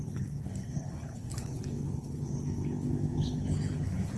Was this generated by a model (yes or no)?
yes